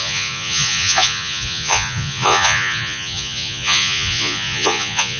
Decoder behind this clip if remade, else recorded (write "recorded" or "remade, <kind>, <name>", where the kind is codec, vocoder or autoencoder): remade, vocoder, Vocos